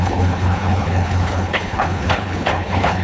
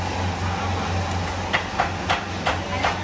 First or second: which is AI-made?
first